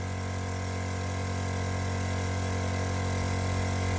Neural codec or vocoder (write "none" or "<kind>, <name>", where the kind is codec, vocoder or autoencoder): none